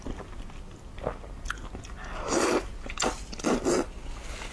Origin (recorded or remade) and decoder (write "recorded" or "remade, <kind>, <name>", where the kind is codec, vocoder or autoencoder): recorded